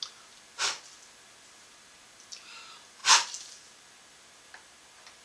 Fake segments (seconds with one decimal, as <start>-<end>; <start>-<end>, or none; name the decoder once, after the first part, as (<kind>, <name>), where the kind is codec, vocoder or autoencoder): none